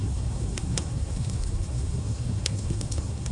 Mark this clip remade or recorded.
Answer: remade